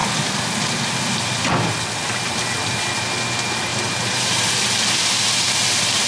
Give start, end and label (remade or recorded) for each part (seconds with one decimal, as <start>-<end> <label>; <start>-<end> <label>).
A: 0.0-3.7 recorded; 3.7-4.5 remade; 4.5-6.1 recorded